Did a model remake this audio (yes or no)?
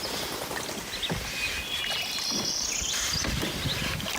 no